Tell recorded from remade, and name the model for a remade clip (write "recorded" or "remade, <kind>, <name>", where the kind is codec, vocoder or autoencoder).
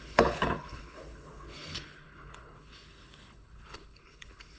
remade, codec, HILCodec